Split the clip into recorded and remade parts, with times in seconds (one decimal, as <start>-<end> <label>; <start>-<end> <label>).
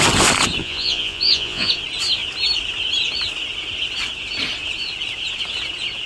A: 0.0-0.6 recorded; 0.6-1.7 remade; 1.7-6.1 recorded